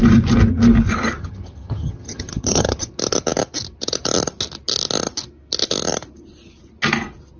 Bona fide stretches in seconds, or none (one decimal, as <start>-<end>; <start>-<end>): 0.0-1.2; 2.9-7.4